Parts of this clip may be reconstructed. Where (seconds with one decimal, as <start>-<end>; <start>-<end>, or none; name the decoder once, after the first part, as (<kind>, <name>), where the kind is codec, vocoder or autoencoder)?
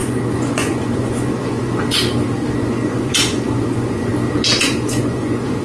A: 0.0-2.0 (vocoder, Vocos); 2.5-4.1; 4.6-5.6